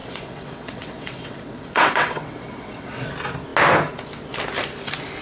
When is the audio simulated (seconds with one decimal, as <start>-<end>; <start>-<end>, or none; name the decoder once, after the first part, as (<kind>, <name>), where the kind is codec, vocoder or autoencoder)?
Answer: 0.0-3.1 (vocoder, WaveNeXt)